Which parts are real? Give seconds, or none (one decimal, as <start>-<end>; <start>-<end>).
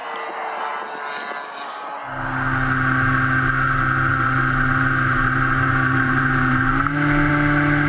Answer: 0.0-4.1; 7.3-7.9